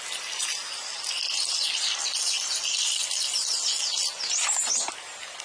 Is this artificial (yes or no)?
no